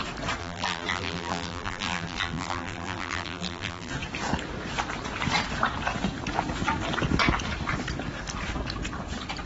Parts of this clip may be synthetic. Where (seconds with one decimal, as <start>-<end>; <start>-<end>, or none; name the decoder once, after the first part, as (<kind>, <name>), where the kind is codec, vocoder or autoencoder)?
0.4-3.9 (vocoder, BigVGAN v2)